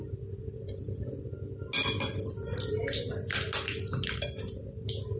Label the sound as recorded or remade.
recorded